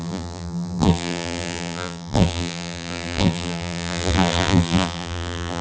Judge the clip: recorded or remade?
remade